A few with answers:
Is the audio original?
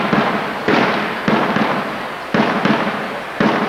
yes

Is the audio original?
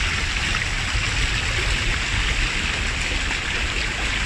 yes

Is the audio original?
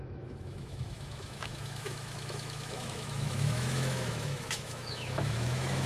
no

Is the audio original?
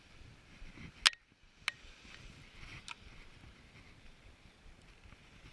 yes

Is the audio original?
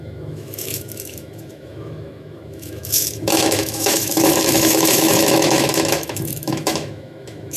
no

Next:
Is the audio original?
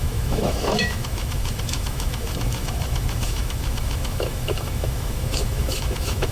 no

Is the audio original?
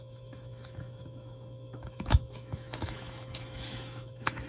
no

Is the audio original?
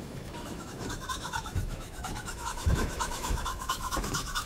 no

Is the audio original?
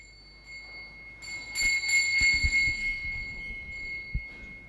yes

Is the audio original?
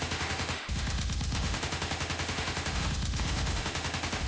no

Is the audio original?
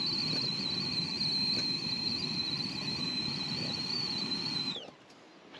yes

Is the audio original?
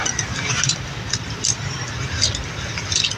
yes